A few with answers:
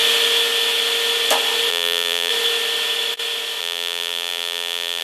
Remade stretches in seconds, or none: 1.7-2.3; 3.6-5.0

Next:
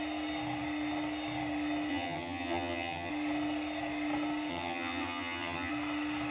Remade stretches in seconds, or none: 1.9-3.1; 4.5-5.7